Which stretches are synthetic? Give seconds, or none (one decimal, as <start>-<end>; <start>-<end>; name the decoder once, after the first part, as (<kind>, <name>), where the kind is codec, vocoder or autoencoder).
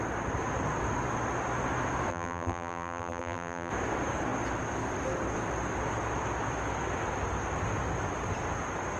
2.1-3.7 (vocoder, BigVGAN v2)